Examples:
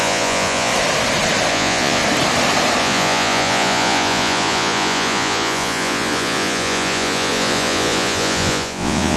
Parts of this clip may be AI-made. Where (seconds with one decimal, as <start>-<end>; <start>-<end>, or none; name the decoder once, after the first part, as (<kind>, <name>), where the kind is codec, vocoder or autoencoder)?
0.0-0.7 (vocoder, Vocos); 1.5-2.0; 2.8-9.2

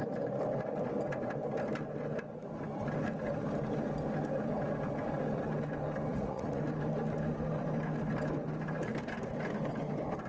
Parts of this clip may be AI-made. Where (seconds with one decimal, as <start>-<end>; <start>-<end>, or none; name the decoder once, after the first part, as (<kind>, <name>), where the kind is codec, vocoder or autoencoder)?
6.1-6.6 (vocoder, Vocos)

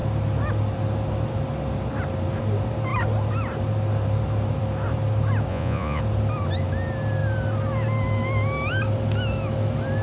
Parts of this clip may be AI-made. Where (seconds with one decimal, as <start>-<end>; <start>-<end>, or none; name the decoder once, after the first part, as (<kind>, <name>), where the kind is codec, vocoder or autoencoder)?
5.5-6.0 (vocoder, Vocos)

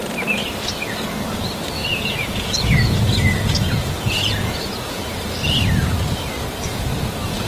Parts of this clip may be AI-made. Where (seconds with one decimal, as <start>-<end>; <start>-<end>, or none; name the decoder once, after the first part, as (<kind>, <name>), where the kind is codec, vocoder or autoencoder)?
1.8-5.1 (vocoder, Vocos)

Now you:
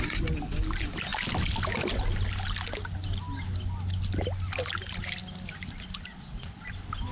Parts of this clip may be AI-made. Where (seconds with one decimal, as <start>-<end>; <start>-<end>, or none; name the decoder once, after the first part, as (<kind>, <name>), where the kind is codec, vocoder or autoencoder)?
6.1-6.6 (vocoder, Vocos)

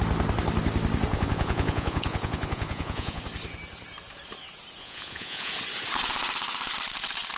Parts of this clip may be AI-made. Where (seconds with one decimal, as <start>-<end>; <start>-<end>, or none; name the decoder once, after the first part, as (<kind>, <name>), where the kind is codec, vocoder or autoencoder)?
1.1-3.2 (vocoder, Vocos); 4.8-5.5

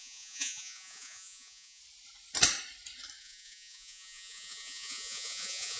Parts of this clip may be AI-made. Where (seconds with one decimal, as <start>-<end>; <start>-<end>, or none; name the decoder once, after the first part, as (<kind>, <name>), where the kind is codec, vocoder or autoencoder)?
0.0-1.8 (vocoder, Vocos); 3.2-5.8

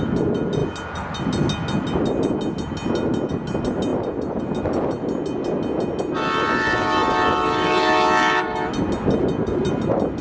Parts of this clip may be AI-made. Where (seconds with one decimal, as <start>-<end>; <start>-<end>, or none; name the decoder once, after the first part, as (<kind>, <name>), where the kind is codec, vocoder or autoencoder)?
none